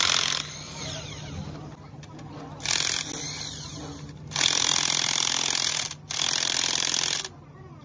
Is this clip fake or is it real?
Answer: real